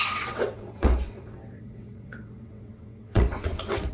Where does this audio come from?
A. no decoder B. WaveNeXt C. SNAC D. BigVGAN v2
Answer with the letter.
B